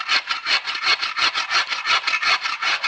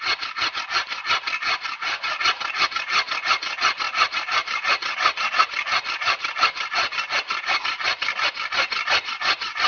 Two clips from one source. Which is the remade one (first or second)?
second